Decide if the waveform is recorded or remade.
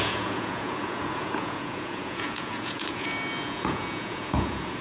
remade